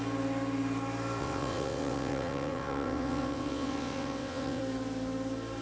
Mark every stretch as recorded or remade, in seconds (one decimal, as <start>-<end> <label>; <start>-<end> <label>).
0.0-1.2 recorded; 1.2-4.6 remade; 4.6-5.6 recorded